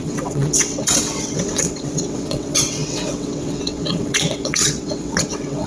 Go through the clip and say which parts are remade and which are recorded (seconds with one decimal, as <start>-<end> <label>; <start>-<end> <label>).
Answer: 0.0-5.7 remade

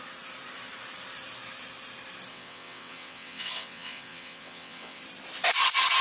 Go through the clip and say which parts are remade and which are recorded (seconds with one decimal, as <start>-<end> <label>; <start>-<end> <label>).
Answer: 0.0-2.3 recorded; 2.3-5.0 remade; 5.0-6.0 recorded

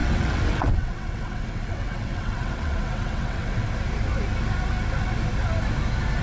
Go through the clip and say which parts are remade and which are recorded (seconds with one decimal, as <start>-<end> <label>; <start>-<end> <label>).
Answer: 0.0-3.7 remade; 3.7-6.2 recorded

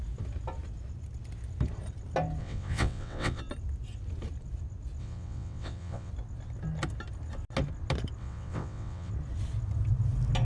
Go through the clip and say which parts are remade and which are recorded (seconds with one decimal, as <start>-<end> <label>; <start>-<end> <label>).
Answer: 0.0-2.4 recorded; 2.4-3.4 remade; 3.4-5.0 recorded; 5.0-6.1 remade; 6.1-8.2 recorded; 8.2-9.1 remade; 9.1-10.4 recorded

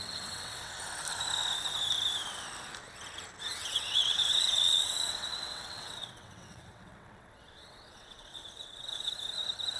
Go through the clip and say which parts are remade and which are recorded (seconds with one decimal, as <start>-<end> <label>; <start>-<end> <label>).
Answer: 0.0-0.8 remade; 0.8-3.5 recorded; 3.5-9.1 remade; 9.1-9.8 recorded

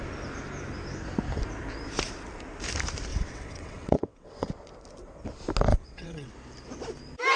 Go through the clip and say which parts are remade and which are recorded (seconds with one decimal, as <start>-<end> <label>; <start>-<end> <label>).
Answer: 0.0-3.1 recorded; 3.1-4.5 remade; 4.5-5.7 recorded; 5.7-6.3 remade; 6.3-7.4 recorded

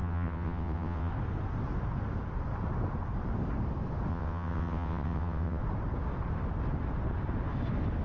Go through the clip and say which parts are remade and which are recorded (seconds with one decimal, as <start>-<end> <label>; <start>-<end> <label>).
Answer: 0.0-1.1 remade; 1.1-4.1 recorded; 4.1-5.6 remade; 5.6-8.0 recorded